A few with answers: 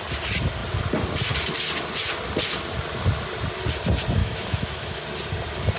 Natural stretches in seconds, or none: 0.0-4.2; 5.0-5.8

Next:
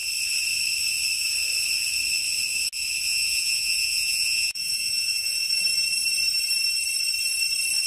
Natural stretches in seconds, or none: 0.0-3.1; 5.5-7.9

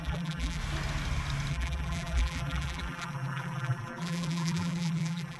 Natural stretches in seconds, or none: 0.6-1.5

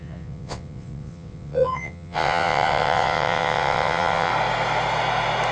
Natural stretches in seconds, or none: 4.3-5.5

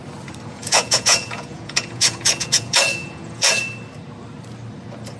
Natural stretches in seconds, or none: 0.0-0.5; 3.6-5.2